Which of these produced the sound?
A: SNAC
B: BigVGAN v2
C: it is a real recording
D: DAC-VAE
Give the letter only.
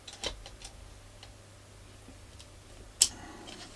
C